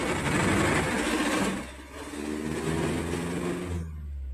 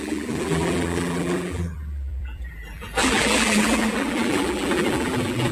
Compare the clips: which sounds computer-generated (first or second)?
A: second